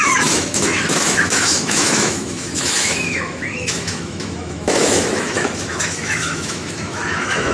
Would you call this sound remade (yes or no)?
yes